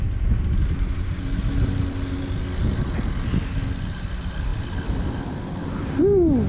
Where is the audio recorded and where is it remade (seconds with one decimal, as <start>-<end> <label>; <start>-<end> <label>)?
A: 0.0-6.5 recorded